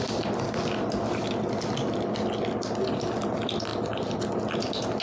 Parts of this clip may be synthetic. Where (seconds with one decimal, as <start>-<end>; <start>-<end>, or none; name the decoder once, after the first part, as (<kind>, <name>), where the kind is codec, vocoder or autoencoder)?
none